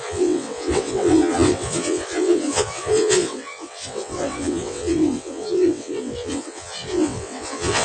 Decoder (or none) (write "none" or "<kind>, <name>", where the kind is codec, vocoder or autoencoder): vocoder, WaveNeXt